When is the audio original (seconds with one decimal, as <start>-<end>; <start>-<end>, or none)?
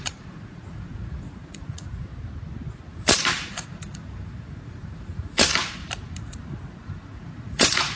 2.1-2.9; 5.8-6.9